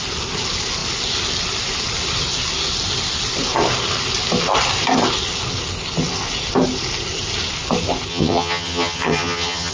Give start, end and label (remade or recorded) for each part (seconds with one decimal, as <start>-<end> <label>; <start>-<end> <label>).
0.0-8.1 recorded; 8.1-9.7 remade